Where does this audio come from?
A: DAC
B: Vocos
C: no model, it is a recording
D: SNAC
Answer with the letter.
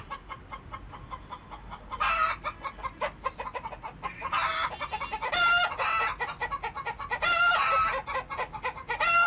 C